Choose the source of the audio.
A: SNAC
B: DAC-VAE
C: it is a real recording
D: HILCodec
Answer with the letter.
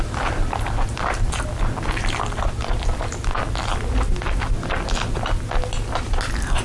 C